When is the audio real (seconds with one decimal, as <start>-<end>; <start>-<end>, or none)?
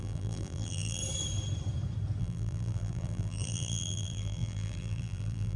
1.0-2.2